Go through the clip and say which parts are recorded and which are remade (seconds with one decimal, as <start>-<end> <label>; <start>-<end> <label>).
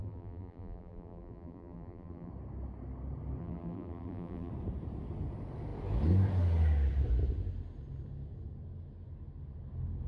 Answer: 0.0-2.3 remade; 2.3-3.4 recorded; 3.4-4.5 remade; 4.5-10.1 recorded